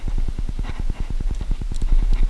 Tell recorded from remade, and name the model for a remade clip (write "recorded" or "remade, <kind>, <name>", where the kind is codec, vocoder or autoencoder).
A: recorded